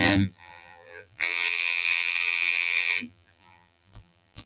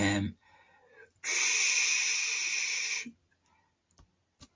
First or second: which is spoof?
first